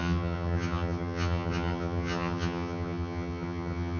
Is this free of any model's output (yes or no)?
no